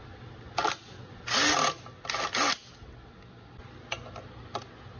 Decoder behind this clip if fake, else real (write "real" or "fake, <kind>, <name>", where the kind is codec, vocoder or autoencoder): real